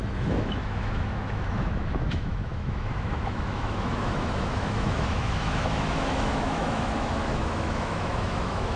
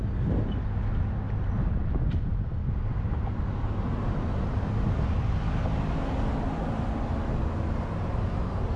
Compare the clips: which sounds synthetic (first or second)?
first